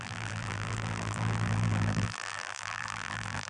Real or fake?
fake